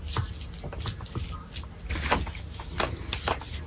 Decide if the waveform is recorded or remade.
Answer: recorded